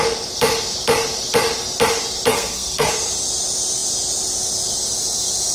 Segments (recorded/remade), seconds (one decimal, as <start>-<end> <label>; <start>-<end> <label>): 0.0-2.3 recorded; 2.3-2.9 remade; 2.9-5.5 recorded